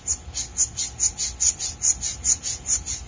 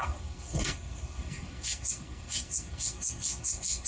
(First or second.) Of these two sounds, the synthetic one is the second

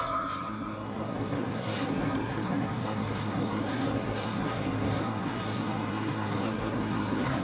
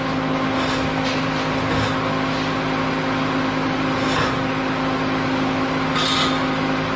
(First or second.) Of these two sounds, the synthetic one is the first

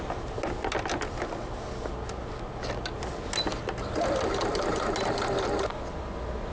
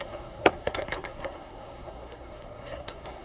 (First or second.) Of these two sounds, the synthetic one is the second